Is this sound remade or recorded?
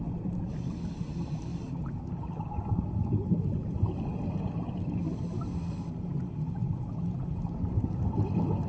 recorded